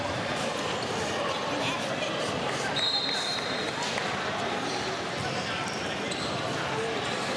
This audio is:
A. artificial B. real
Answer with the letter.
B